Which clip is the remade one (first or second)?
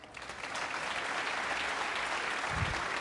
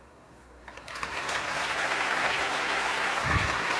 second